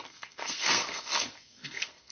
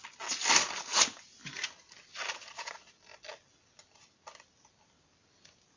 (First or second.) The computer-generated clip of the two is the first